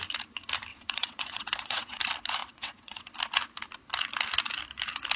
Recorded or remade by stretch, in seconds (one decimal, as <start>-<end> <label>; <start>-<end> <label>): 0.0-0.7 recorded; 0.7-2.0 remade; 2.0-2.4 recorded; 2.4-3.0 remade; 3.0-5.2 recorded